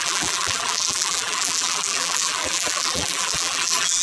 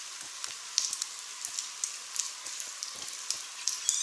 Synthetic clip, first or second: first